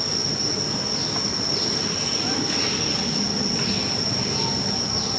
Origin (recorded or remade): recorded